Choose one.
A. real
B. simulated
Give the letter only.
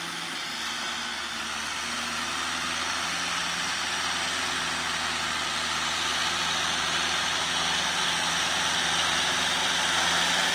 A